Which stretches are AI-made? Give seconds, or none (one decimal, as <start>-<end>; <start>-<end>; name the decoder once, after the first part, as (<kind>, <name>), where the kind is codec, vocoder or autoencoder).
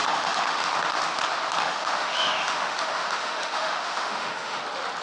0.0-0.7 (autoencoder, DAC-VAE); 1.6-4.6